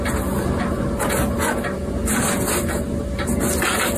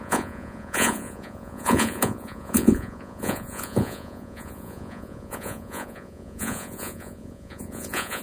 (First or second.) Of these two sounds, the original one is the first